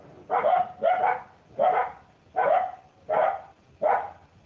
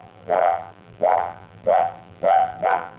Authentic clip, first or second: first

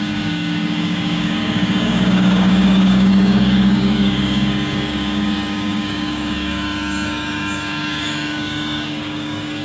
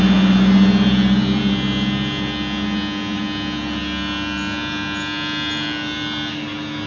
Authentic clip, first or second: second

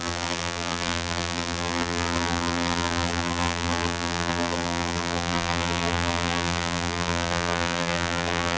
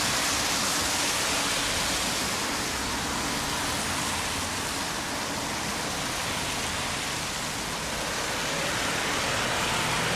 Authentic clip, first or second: second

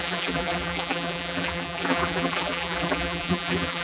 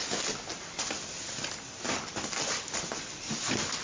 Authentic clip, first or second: second